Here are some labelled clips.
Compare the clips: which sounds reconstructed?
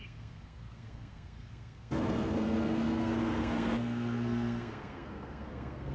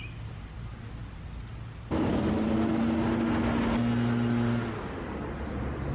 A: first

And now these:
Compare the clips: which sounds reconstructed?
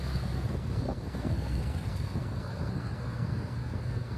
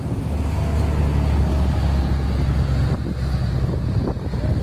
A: first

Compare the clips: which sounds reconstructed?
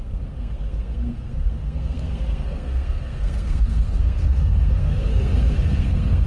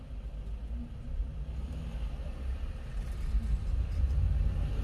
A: first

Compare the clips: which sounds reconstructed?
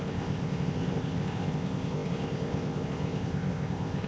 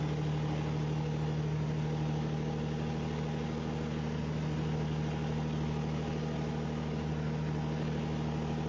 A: first